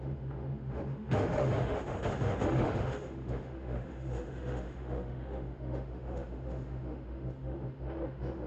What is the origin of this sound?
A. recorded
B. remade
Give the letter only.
B